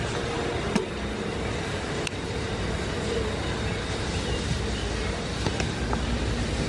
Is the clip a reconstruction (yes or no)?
no